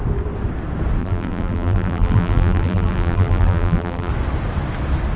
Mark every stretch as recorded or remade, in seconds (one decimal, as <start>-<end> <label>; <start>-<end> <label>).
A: 0.0-1.0 recorded; 1.0-4.1 remade; 4.1-5.2 recorded